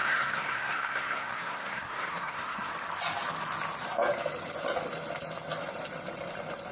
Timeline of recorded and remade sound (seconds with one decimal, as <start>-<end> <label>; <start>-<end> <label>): 0.0-2.7 remade; 2.7-6.7 recorded